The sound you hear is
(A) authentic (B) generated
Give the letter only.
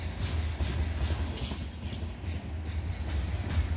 A